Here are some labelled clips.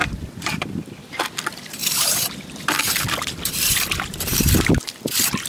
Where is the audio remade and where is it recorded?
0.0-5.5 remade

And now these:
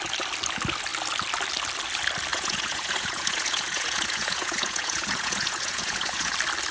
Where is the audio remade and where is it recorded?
0.0-2.3 recorded; 2.3-6.3 remade; 6.3-6.7 recorded

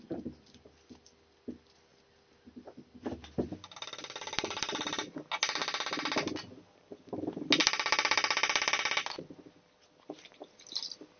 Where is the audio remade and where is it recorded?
0.0-11.2 recorded

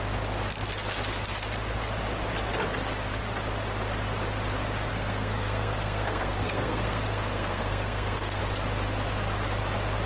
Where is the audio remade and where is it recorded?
0.0-4.9 recorded; 4.9-8.4 remade; 8.4-10.1 recorded

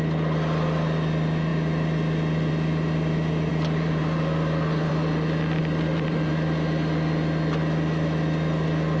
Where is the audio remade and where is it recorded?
0.0-3.5 recorded; 3.5-4.9 remade; 4.9-5.6 recorded; 5.6-6.3 remade; 6.3-9.0 recorded

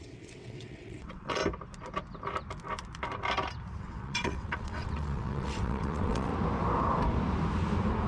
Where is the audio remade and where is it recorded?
0.0-1.4 remade; 1.4-3.8 recorded; 3.8-6.3 remade; 6.3-8.1 recorded